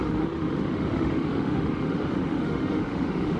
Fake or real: fake